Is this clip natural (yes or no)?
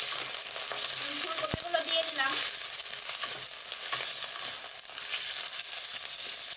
yes